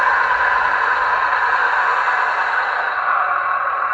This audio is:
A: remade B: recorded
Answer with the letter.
A